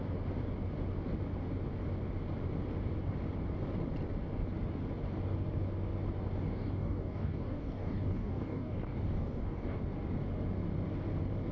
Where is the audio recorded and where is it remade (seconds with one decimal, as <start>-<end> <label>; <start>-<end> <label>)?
0.0-6.5 recorded; 6.5-9.8 remade; 9.8-11.5 recorded